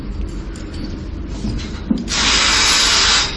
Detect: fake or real real